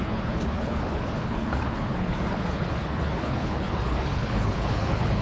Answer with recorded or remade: remade